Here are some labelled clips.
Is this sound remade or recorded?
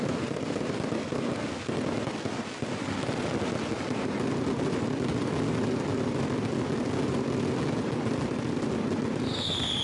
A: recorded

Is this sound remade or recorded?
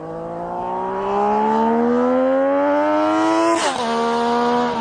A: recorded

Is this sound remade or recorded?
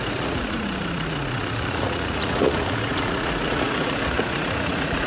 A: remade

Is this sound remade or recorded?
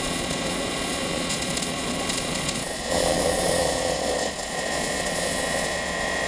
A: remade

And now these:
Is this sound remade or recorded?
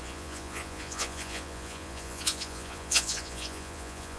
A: remade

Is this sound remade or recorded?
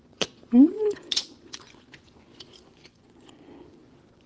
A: remade